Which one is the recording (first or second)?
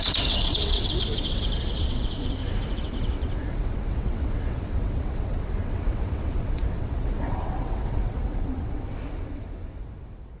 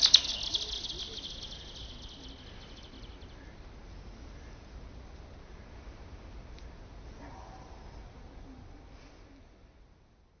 second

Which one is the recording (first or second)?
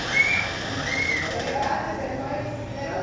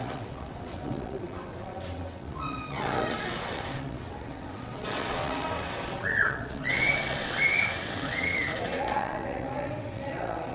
first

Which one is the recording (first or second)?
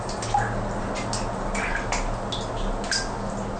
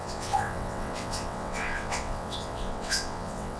first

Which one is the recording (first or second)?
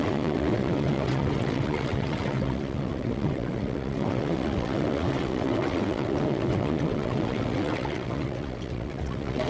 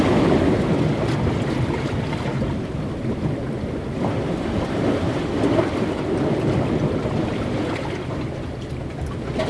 second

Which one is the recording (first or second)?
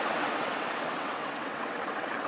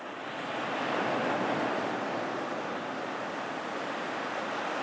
second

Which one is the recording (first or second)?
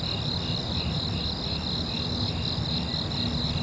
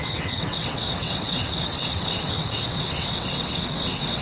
first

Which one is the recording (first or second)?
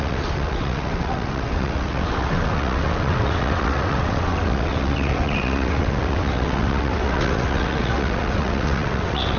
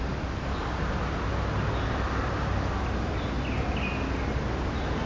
second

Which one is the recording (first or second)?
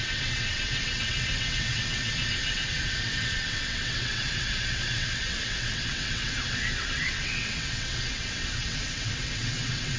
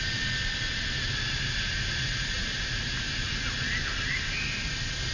second